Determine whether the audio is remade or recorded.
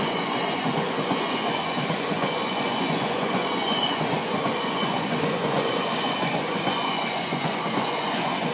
remade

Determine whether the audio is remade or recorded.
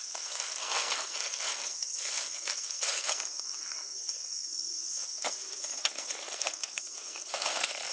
remade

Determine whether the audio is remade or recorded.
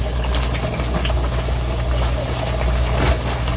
recorded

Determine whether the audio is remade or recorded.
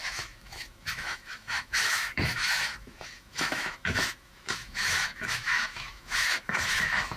remade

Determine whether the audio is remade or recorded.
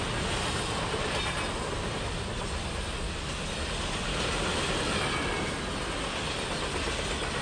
recorded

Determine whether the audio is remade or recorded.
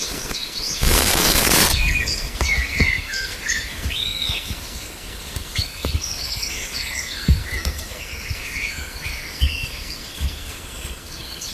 remade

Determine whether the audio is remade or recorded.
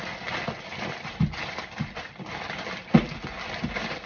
remade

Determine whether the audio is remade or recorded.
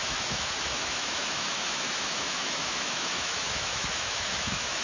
remade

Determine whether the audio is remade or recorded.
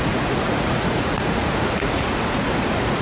remade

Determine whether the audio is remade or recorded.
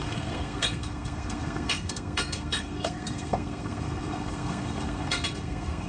remade